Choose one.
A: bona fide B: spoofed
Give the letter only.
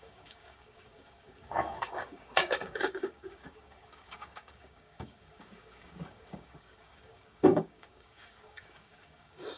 B